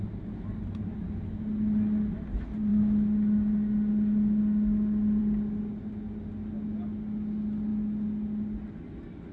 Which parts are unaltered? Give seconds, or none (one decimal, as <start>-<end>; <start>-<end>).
0.0-9.3